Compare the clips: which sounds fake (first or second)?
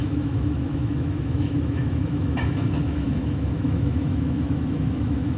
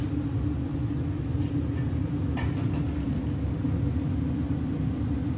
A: first